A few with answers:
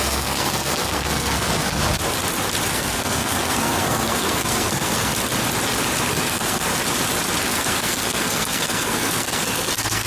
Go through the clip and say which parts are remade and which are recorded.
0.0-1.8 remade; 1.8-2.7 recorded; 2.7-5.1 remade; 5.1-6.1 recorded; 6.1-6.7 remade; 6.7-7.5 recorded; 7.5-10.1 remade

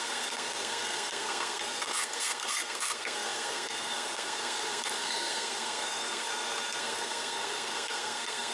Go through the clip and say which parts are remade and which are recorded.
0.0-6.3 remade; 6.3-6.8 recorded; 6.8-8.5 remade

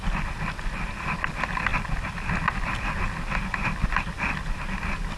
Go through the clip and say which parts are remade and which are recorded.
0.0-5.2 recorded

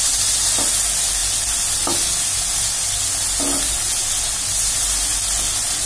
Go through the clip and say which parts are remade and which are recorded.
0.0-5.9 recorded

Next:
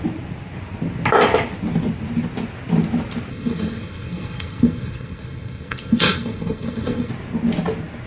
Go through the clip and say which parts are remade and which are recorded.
0.0-3.3 recorded; 3.3-7.1 remade; 7.1-8.1 recorded

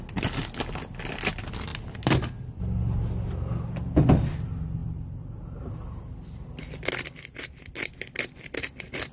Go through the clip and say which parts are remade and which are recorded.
0.0-9.1 recorded